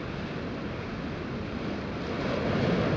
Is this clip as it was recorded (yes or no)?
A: yes